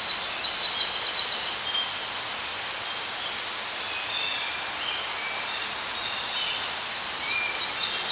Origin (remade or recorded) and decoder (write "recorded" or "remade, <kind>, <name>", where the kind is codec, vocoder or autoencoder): recorded